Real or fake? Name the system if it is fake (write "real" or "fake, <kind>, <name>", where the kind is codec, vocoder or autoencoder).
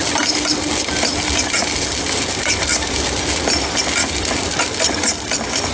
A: real